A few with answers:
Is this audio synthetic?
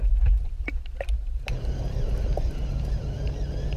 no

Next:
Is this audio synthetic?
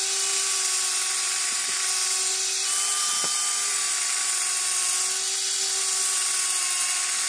no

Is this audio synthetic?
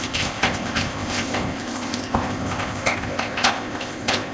yes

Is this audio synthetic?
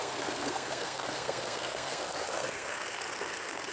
yes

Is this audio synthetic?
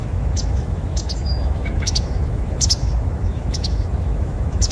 yes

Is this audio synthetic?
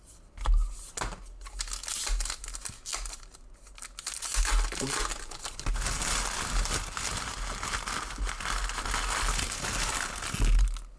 no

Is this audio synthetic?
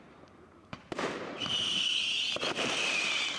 yes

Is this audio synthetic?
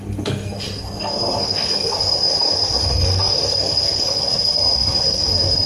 yes